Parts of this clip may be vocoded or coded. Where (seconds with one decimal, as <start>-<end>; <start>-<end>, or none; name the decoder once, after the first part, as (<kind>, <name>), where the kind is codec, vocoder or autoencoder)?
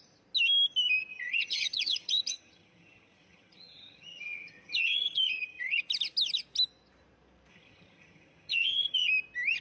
1.1-5.8 (vocoder, HiFi-GAN); 7.5-9.1